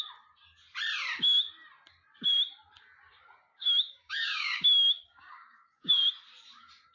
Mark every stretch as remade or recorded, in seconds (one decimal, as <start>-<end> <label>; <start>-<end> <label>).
0.0-3.5 recorded; 3.5-5.9 remade; 5.9-6.9 recorded